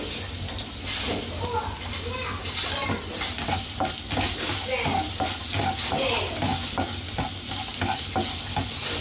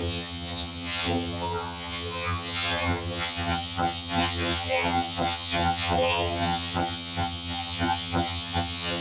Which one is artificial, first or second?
second